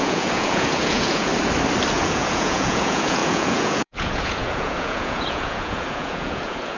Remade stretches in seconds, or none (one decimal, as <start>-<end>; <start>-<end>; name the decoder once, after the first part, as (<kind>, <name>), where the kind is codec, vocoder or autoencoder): 0.0-1.3 (vocoder, Vocos); 1.9-6.8